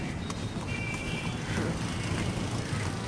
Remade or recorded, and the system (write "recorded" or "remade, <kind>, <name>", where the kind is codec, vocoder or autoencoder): recorded